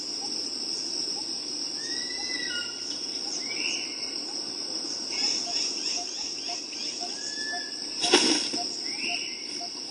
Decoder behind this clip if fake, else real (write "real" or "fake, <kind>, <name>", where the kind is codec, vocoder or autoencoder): real